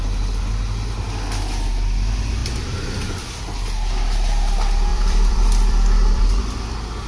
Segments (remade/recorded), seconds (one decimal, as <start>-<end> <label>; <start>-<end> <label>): 0.0-2.4 recorded; 2.4-3.2 remade; 3.2-4.9 recorded; 4.9-6.4 remade; 6.4-7.1 recorded